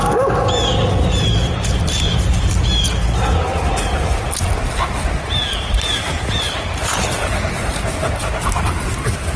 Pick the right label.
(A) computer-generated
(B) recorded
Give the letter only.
B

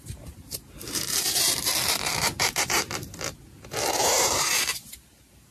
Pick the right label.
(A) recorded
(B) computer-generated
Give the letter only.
B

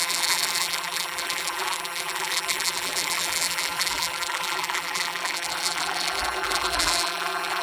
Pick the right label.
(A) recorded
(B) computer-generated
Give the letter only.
B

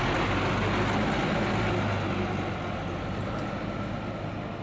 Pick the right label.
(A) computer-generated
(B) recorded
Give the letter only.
B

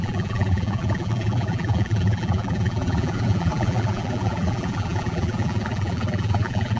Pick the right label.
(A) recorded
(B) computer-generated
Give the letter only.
B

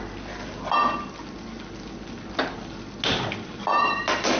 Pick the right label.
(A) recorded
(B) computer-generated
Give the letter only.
A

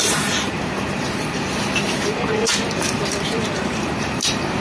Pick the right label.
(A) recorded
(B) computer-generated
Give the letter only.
B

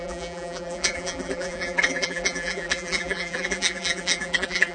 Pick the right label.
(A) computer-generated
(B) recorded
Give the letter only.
A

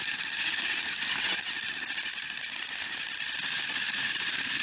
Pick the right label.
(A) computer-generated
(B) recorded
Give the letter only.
A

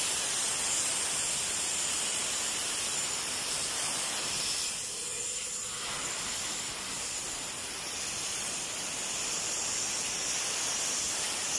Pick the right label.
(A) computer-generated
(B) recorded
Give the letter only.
A